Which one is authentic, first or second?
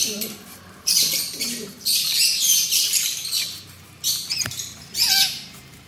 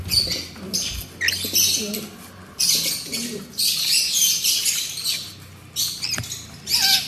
second